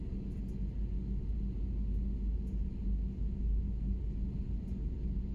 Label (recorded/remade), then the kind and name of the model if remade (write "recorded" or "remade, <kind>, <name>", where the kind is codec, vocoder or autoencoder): recorded